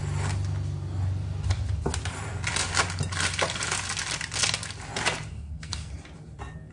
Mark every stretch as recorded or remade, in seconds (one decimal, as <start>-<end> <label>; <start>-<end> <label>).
0.0-5.3 recorded; 5.3-5.9 remade; 5.9-6.7 recorded